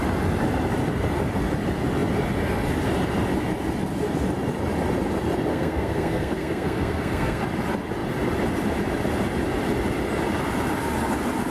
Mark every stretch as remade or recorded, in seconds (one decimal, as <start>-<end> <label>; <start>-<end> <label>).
0.0-5.5 recorded; 5.5-7.4 remade; 7.4-11.5 recorded